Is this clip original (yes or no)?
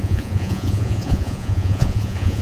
no